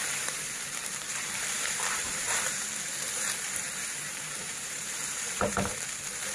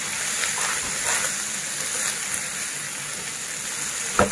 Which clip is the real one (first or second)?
second